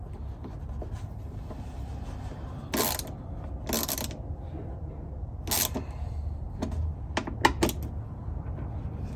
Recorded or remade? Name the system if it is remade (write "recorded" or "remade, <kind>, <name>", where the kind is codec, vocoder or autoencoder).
recorded